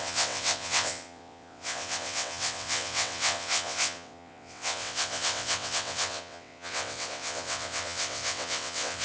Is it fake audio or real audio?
fake